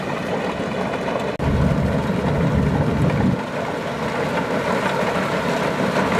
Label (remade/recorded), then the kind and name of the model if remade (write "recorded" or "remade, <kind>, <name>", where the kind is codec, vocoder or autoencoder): recorded